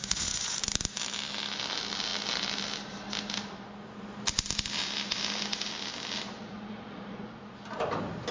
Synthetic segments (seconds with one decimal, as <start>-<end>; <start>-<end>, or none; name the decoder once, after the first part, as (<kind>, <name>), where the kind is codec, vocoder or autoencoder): 0.0-0.6 (vocoder, Vocos); 6.4-7.5